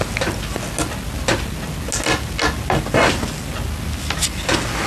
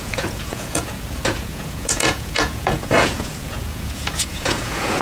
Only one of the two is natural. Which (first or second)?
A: first